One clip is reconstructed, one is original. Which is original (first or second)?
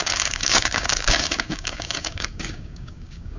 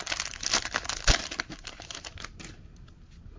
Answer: second